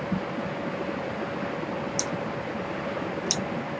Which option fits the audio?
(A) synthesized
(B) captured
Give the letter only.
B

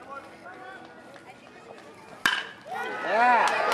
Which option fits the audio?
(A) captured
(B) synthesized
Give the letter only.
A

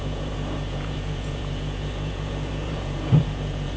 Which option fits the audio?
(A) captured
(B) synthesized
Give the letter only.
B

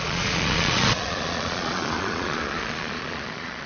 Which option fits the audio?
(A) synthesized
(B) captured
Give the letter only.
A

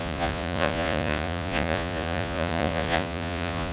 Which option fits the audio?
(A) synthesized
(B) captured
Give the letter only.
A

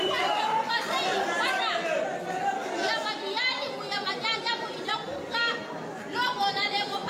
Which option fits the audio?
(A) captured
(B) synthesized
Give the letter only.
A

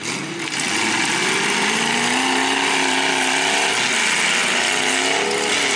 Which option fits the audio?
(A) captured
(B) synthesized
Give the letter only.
A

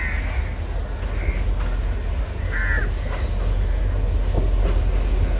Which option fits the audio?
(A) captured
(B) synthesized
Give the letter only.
A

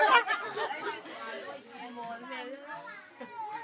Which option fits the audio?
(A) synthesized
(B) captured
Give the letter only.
B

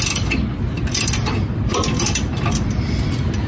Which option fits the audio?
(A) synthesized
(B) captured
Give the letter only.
B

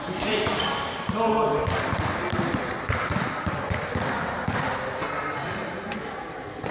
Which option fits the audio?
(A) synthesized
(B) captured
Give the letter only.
B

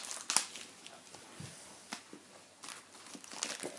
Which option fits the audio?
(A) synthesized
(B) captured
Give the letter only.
B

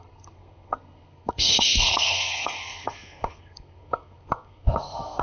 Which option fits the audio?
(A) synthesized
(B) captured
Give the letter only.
A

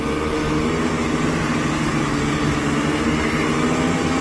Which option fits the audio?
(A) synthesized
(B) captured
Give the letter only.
B